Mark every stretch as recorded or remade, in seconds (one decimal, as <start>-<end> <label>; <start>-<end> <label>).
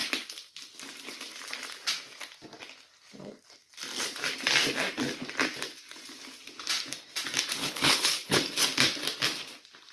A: 0.0-7.6 recorded; 7.6-8.5 remade; 8.5-9.9 recorded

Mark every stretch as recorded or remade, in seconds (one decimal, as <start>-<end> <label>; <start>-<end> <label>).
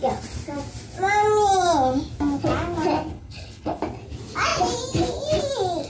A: 0.0-3.1 recorded; 3.1-3.8 remade; 3.8-5.9 recorded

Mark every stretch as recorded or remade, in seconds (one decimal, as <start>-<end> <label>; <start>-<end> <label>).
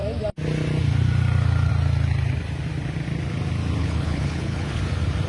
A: 0.0-3.8 recorded; 3.8-4.8 remade; 4.8-5.3 recorded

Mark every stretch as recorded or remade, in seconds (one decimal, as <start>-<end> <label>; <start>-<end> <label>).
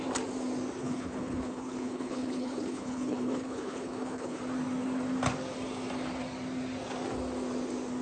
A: 0.0-0.8 recorded; 0.8-4.4 remade; 4.4-8.0 recorded